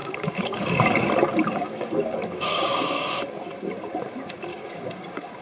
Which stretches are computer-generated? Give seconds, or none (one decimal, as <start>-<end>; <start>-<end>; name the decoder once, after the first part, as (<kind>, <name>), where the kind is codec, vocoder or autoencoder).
0.0-0.8 (codec, DAC); 1.3-3.2; 4.5-5.4